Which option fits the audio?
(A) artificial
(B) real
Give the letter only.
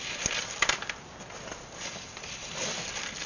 B